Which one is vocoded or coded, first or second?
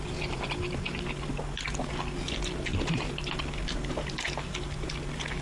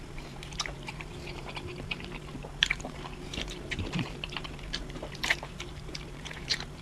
second